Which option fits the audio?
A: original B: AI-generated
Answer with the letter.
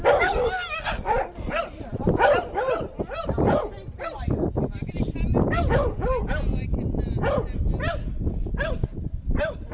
A